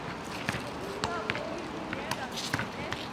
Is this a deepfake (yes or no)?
no